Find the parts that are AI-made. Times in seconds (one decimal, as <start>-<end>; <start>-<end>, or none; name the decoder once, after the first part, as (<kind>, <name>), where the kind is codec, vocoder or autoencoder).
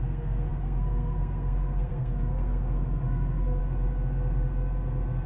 0.0-3.6 (codec, SNAC)